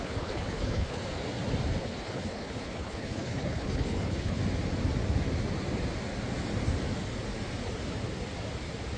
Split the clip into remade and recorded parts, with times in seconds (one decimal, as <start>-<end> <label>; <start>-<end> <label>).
0.0-1.0 remade; 1.0-1.8 recorded; 1.8-4.4 remade; 4.4-9.0 recorded